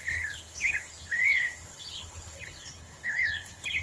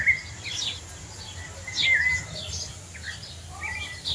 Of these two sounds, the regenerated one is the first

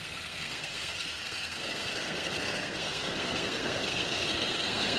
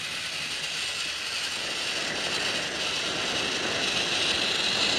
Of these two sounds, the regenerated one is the first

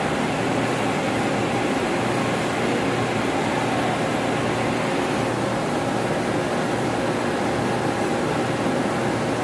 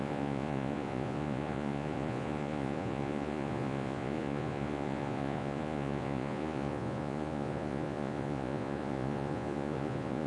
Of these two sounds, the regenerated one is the second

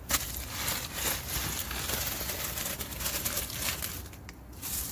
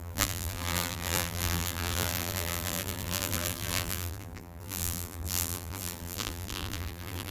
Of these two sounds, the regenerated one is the second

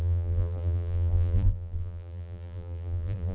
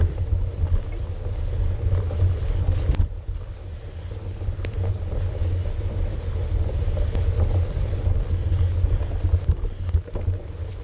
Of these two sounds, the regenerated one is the first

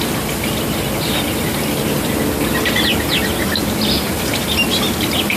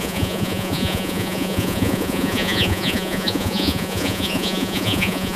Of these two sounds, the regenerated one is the second